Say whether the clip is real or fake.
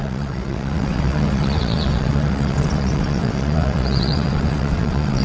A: fake